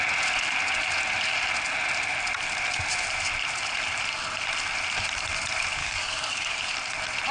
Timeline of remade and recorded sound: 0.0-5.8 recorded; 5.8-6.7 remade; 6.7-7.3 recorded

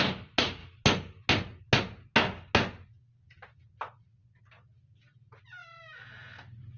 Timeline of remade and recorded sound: 0.0-6.8 recorded

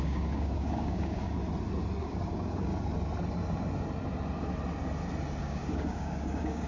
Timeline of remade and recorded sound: 0.0-1.4 remade; 1.4-2.0 recorded; 2.0-2.7 remade; 2.7-5.4 recorded; 5.4-6.7 remade

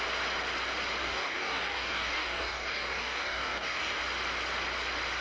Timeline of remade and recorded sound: 0.0-1.0 recorded; 1.0-4.0 remade; 4.0-5.2 recorded